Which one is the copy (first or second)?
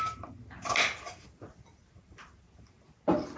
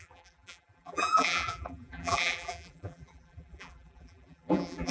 second